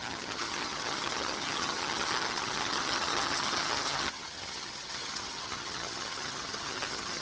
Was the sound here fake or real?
fake